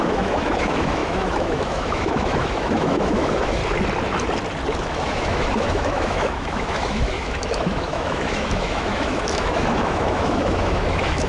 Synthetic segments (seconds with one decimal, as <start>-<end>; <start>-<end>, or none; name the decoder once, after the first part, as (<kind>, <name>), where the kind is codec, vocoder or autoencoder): 0.0-3.6 (autoencoder, DAC-VAE); 4.8-11.3